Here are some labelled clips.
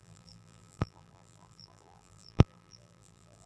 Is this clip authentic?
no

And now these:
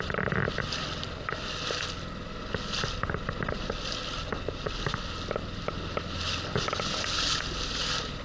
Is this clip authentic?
yes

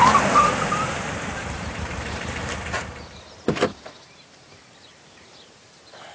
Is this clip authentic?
no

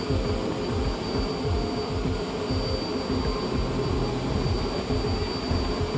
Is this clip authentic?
yes